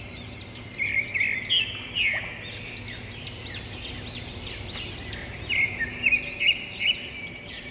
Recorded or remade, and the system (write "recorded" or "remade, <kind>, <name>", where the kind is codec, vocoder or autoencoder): recorded